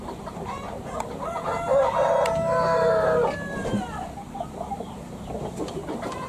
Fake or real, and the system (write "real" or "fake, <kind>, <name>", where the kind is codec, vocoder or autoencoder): real